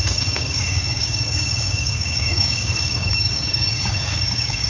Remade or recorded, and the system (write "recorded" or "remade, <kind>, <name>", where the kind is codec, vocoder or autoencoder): remade, codec, DAC